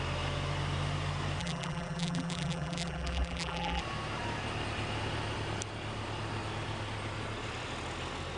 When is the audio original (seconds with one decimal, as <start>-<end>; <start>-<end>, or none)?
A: 0.0-1.4; 3.8-8.4